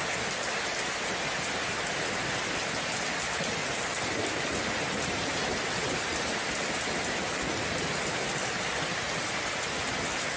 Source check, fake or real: real